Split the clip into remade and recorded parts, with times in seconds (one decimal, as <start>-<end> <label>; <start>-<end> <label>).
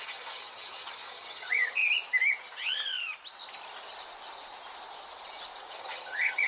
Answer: 0.0-1.8 remade; 1.8-5.7 recorded; 5.7-6.5 remade